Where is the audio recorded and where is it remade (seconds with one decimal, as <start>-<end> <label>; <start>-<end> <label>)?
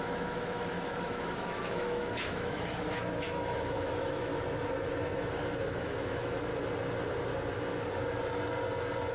0.0-4.3 remade; 4.3-5.8 recorded; 5.8-6.5 remade; 6.5-9.1 recorded